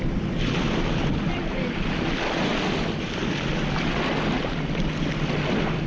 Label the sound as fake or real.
real